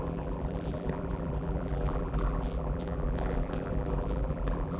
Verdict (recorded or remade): remade